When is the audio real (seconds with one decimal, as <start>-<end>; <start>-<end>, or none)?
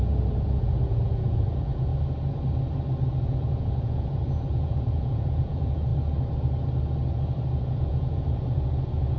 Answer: 1.9-3.2; 5.9-7.6